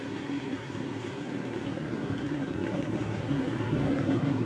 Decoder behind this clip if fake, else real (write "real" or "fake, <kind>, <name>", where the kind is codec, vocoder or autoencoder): fake, codec, SNAC